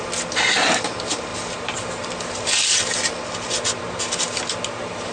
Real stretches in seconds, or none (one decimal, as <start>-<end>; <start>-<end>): 0.0-5.1